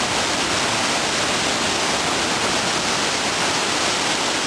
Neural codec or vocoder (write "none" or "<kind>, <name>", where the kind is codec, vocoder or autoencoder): none